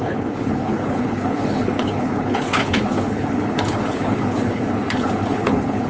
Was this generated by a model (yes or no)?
yes